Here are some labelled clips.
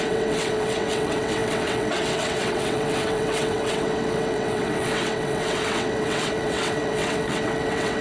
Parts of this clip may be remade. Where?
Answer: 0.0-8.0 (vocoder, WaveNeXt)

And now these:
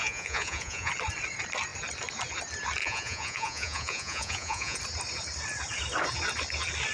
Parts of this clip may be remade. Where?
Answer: 0.0-0.9 (vocoder, Vocos); 2.8-4.8

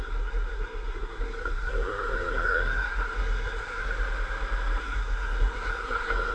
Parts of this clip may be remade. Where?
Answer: 0.0-3.8 (codec, SNAC); 4.8-6.3

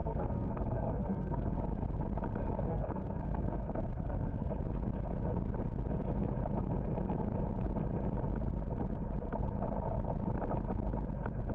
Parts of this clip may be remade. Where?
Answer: 0.0-1.5 (codec, SNAC); 2.7-4.5

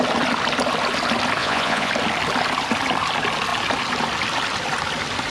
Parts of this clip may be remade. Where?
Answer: 1.4-1.9 (vocoder, Vocos)

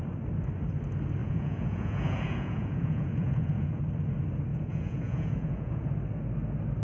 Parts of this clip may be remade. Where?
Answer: 1.2-3.8 (vocoder, Vocos); 4.5-5.9